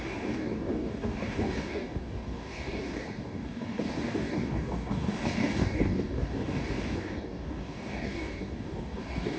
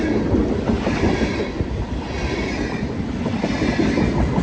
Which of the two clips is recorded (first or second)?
second